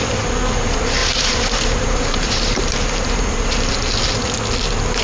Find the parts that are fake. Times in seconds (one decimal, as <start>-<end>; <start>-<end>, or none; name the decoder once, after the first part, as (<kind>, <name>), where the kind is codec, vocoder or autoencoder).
1.0-3.7 (vocoder, BigVGAN v2)